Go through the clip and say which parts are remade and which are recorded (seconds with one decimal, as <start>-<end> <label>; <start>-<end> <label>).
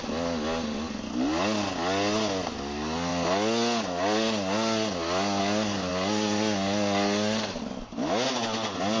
0.0-9.0 recorded